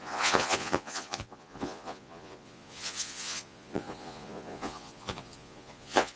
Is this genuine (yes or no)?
no